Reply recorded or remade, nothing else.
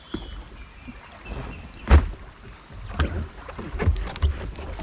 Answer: recorded